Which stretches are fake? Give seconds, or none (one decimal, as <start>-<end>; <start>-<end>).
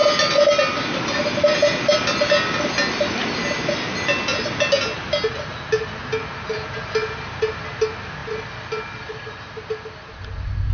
none